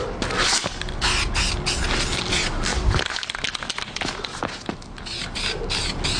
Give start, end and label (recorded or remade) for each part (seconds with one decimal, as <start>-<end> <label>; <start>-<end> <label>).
0.0-6.2 recorded